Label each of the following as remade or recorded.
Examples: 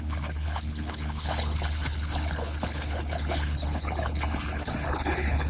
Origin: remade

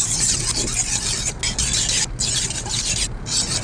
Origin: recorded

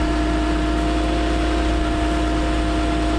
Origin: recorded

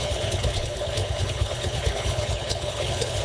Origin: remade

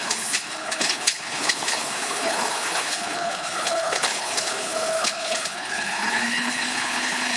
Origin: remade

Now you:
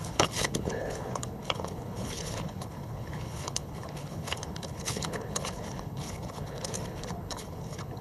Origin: remade